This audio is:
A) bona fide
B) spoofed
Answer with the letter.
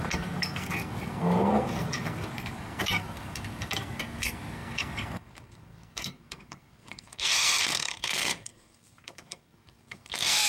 B